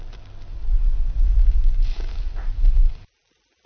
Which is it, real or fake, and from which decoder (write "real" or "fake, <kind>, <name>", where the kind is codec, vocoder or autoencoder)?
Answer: real